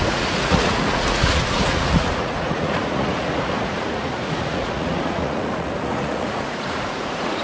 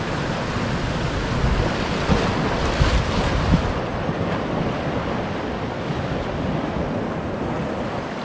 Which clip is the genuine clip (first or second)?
second